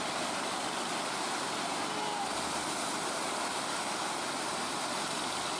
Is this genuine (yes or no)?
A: yes